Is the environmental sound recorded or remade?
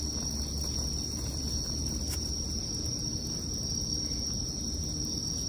recorded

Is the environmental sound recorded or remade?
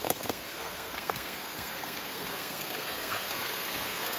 remade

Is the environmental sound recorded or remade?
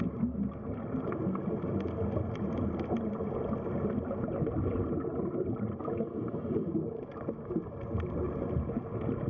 recorded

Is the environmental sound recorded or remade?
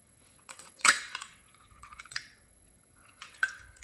remade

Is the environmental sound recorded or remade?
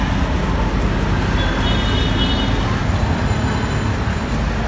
recorded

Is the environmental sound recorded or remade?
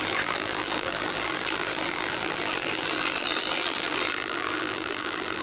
remade